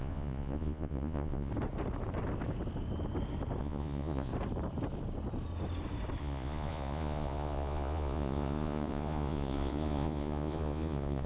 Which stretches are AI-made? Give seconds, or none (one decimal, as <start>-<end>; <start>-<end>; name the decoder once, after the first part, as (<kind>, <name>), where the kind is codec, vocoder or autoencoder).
0.0-1.5 (vocoder, Vocos); 3.6-4.3; 6.2-11.3